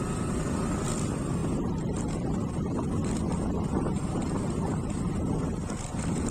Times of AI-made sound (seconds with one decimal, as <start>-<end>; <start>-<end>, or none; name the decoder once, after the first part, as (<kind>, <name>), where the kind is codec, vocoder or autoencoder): none